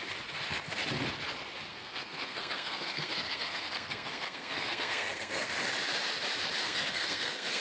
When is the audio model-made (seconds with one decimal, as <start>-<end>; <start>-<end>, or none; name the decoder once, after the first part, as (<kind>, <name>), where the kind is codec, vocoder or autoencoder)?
1.7-5.5 (codec, SNAC); 6.6-7.6